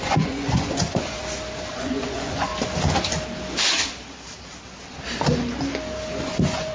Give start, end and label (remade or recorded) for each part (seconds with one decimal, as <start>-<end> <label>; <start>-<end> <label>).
0.0-1.2 remade; 1.2-1.7 recorded; 1.7-2.5 remade; 2.5-6.2 recorded; 6.2-6.7 remade